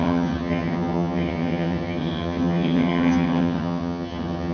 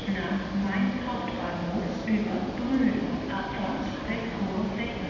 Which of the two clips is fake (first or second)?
first